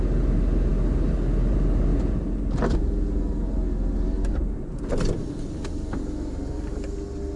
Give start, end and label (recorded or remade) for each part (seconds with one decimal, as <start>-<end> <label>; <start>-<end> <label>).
0.0-7.4 recorded